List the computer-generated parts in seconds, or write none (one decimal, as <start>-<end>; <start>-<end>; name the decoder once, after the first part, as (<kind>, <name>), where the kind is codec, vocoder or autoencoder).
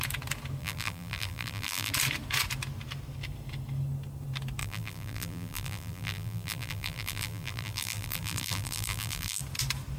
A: 0.6-1.9 (vocoder, BigVGAN v2); 4.6-9.4